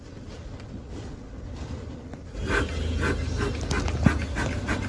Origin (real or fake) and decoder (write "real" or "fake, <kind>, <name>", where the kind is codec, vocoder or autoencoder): real